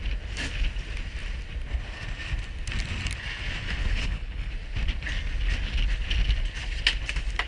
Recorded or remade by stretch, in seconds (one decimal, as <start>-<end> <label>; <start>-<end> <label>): 0.0-3.8 recorded; 3.8-4.5 remade; 4.5-7.5 recorded